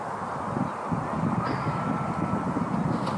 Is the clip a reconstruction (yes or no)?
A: no